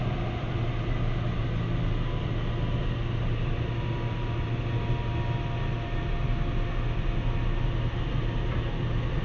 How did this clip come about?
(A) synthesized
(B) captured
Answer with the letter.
B